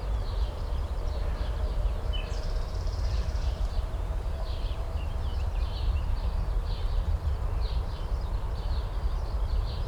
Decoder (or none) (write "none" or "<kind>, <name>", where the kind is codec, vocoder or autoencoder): vocoder, BigVGAN v2